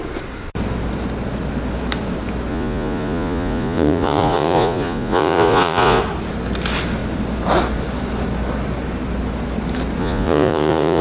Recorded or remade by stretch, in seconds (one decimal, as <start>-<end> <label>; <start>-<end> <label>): 0.0-2.5 recorded; 2.5-6.0 remade; 6.0-10.0 recorded; 10.0-11.0 remade